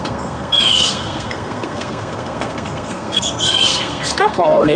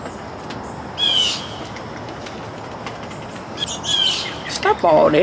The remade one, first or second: first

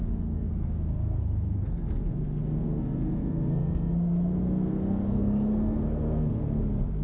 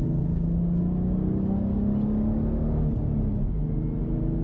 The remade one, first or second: first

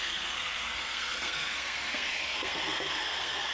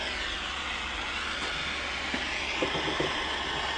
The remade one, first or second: first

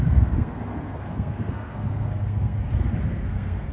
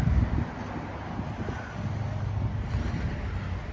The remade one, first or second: first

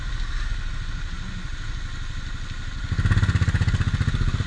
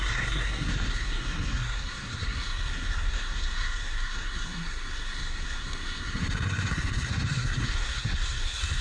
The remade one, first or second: second